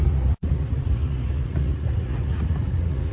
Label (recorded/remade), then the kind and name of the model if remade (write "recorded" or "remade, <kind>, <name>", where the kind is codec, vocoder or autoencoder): remade, vocoder, Vocos